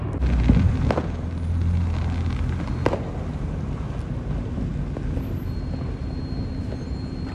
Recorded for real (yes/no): yes